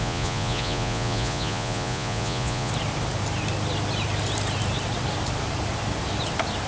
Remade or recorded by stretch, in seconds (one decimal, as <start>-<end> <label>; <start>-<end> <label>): 0.0-2.7 remade; 2.7-6.7 recorded